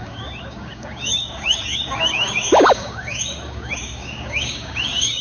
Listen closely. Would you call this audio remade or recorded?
remade